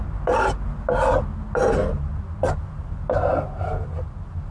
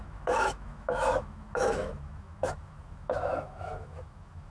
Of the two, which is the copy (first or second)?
second